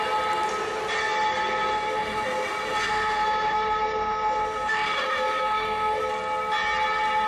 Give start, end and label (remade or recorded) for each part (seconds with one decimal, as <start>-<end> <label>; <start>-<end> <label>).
0.0-1.7 recorded; 1.7-6.1 remade; 6.1-7.3 recorded